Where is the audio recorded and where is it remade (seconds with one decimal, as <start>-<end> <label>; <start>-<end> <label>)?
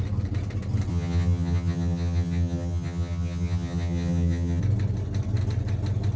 0.0-0.9 recorded; 0.9-4.6 remade; 4.6-6.2 recorded